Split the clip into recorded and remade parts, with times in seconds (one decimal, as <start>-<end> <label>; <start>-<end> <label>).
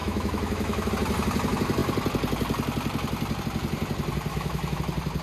0.0-0.9 remade; 0.9-4.3 recorded; 4.3-4.8 remade; 4.8-5.2 recorded